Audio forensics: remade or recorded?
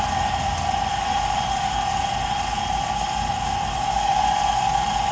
remade